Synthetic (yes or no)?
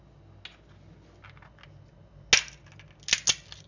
no